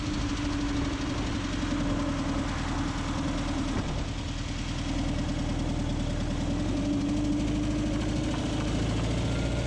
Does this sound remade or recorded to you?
recorded